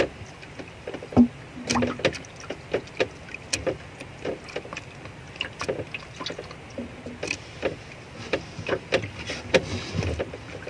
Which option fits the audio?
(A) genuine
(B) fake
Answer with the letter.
A